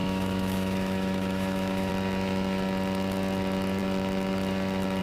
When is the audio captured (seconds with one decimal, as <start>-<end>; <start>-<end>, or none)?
1.9-5.0